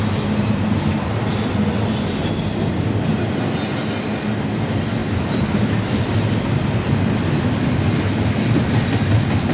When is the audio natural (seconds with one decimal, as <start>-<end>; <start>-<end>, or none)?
0.0-9.5